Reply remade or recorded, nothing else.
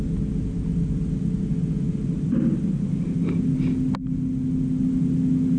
recorded